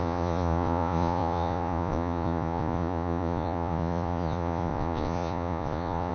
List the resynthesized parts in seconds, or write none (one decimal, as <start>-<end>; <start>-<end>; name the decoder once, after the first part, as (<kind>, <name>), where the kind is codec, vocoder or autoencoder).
0.0-6.1 (vocoder, Vocos)